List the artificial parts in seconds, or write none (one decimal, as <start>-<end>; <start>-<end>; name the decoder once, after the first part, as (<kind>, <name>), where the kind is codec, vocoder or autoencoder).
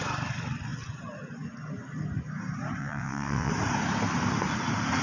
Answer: 2.8-3.5 (vocoder, WaveNeXt)